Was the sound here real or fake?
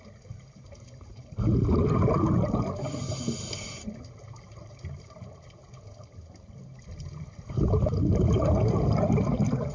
real